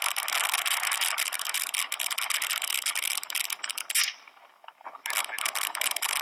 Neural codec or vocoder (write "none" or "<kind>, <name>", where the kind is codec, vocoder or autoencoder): none